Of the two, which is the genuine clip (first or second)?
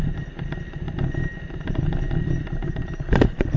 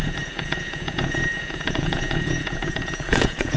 first